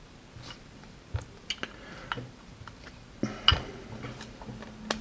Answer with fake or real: real